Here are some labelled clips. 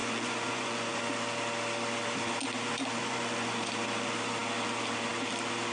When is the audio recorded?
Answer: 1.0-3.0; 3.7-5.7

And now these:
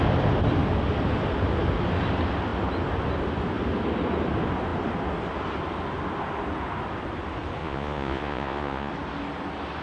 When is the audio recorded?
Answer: 0.0-7.6; 8.9-9.8

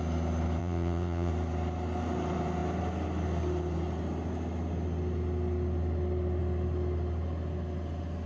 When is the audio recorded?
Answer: 0.0-0.6; 1.3-8.3

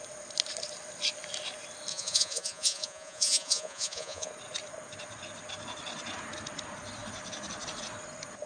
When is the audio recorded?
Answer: 0.0-1.9; 4.3-8.5

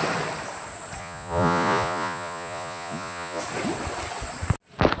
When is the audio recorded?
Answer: 0.0-1.0; 3.4-5.0